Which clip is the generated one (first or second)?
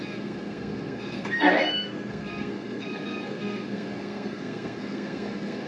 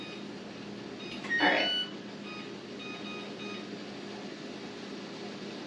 first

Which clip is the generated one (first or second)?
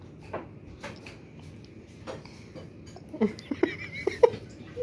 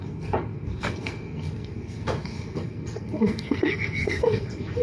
second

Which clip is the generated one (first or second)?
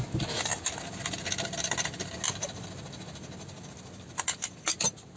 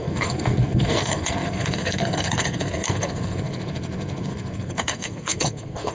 second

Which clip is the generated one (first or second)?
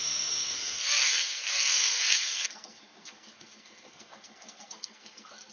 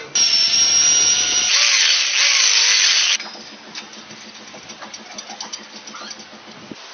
first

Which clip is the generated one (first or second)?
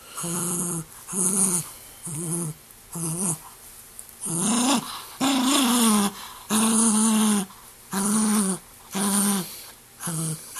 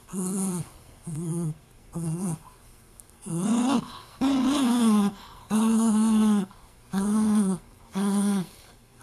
second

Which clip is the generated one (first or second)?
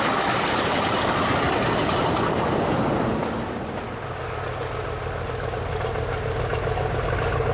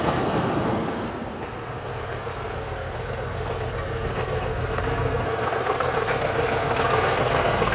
second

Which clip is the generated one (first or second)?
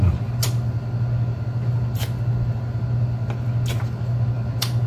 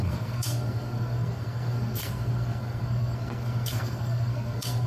second